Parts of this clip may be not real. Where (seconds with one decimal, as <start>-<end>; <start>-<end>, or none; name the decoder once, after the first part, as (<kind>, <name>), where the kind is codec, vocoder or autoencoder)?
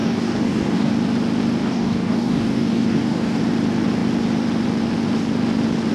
0.0-0.9 (codec, DAC); 1.6-3.4